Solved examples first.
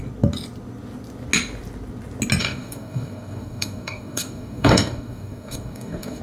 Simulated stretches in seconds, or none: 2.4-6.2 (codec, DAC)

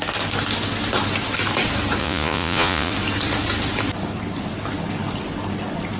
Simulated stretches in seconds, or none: 2.0-2.9 (vocoder, Vocos)